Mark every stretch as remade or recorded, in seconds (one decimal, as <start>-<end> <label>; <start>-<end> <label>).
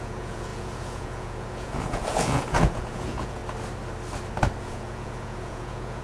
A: 0.0-3.4 remade; 3.4-4.6 recorded; 4.6-6.0 remade